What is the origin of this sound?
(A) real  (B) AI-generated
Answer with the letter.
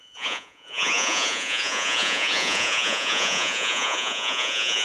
B